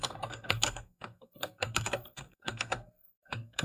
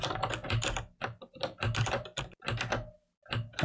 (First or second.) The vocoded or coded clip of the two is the first